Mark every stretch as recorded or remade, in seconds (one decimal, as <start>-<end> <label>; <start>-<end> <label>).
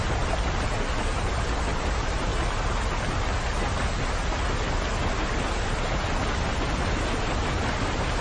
0.0-8.2 recorded